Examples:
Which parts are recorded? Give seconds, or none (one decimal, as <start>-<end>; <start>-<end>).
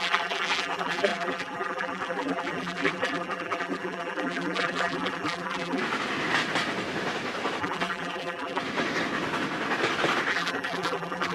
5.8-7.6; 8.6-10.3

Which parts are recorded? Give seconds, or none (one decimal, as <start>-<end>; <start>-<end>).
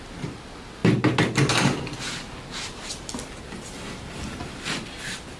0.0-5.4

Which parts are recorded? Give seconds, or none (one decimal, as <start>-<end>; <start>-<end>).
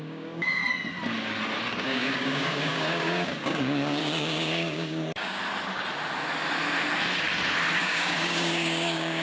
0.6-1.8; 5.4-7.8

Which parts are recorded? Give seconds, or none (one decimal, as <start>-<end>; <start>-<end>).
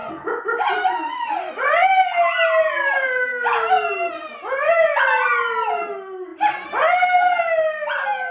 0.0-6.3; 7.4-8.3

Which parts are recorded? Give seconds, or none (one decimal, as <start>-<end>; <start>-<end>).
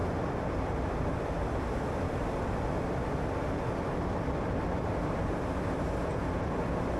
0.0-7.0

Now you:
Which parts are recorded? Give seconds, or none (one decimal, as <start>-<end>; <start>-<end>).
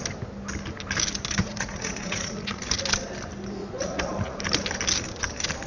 0.0-1.4; 2.6-3.6; 4.4-5.7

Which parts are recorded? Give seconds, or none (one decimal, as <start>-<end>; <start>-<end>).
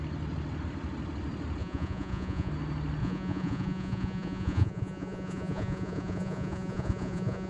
0.0-1.6; 2.5-3.0